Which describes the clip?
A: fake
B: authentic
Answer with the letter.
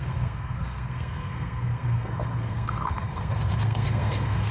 A